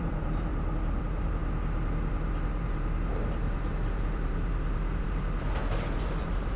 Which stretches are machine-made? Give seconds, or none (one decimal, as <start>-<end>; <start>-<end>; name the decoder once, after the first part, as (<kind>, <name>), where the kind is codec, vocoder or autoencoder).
0.0-0.5 (vocoder, BigVGAN v2); 1.0-1.4; 2.1-6.6